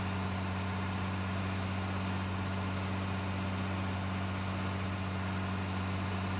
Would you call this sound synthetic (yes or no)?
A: no